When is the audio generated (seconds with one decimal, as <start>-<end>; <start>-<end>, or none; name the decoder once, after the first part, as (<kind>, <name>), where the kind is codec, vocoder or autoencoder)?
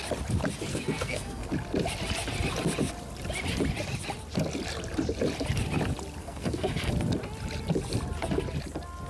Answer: 0.7-1.5 (codec, SNAC); 6.2-6.9